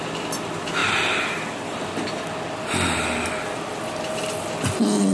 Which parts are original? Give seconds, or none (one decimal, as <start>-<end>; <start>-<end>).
0.0-5.1